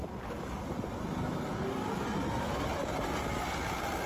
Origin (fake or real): real